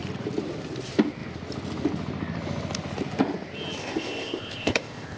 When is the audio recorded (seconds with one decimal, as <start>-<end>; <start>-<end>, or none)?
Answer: 0.0-3.8